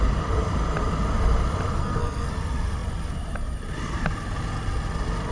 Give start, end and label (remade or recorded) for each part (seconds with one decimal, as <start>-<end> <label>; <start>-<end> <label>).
0.0-1.8 recorded; 1.8-2.3 remade; 2.3-5.3 recorded